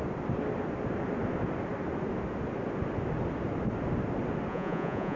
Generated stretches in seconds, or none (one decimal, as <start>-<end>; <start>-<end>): 4.5-5.2